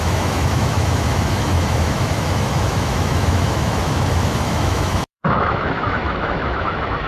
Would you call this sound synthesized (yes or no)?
yes